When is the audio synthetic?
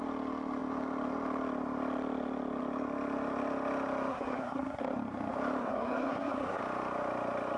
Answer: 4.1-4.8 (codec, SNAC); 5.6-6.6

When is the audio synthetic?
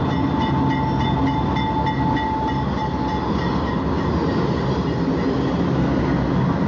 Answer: none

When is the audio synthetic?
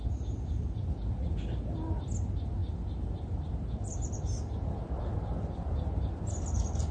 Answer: none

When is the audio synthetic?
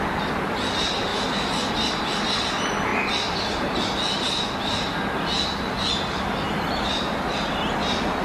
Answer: none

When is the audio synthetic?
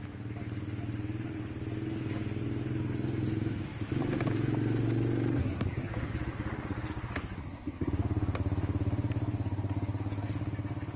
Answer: 5.4-5.9 (codec, SNAC); 7.4-7.9